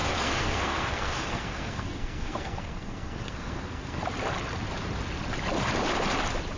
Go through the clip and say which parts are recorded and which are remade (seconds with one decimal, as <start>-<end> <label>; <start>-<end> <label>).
0.0-4.0 remade; 4.0-6.6 recorded